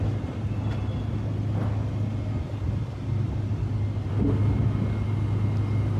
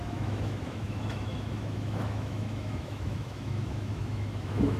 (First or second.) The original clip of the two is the first